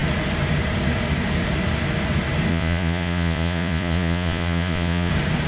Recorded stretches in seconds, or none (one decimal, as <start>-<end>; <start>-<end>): 0.0-2.5; 5.1-5.5